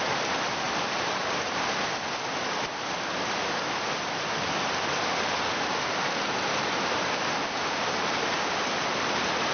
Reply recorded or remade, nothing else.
recorded